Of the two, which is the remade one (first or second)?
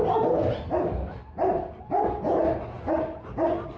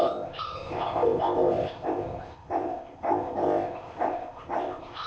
second